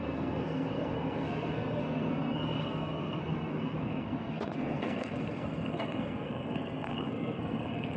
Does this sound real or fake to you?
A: fake